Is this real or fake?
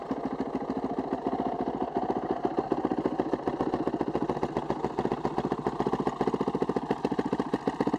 real